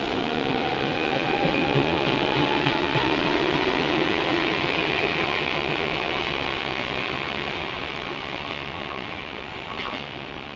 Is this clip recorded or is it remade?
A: remade